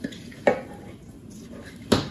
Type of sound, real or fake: real